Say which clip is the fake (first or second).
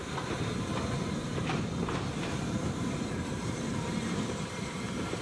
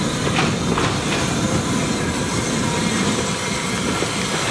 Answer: first